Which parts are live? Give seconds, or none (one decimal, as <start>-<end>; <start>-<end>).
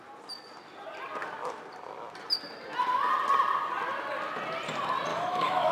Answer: 0.0-5.1